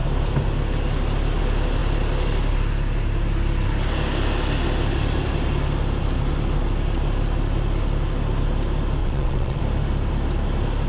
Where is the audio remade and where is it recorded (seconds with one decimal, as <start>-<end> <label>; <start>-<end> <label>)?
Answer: 0.0-9.0 recorded; 9.0-9.6 remade; 9.6-10.9 recorded